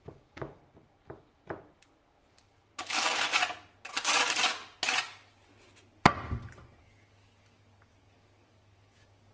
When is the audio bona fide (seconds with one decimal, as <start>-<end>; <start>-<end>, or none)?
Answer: 0.6-2.2; 2.7-6.8